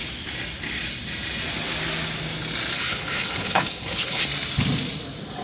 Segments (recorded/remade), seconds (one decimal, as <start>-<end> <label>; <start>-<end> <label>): 0.0-2.7 recorded; 2.7-4.2 remade; 4.2-5.4 recorded